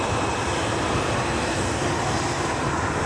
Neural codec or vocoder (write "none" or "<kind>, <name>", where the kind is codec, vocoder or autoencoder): none